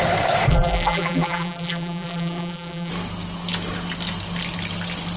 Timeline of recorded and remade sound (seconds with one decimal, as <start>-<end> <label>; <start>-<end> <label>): 0.0-0.5 recorded; 0.5-2.9 remade; 2.9-5.2 recorded